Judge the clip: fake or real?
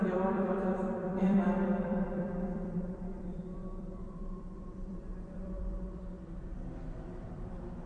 fake